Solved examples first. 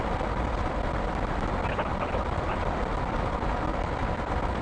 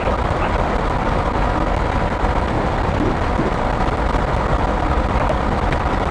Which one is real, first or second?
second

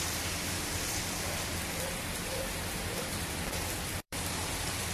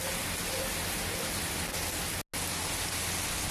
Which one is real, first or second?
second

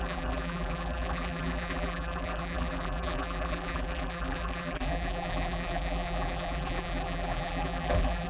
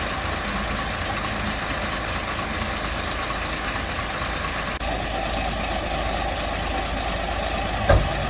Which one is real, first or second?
second